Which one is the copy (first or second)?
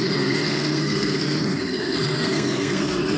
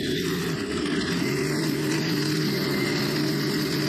first